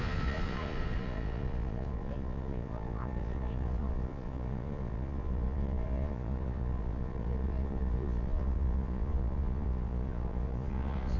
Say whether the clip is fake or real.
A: fake